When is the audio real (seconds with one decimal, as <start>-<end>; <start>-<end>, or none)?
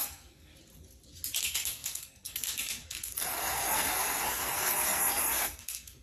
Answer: 0.5-1.4